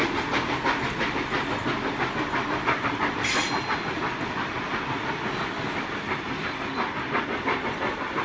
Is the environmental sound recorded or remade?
recorded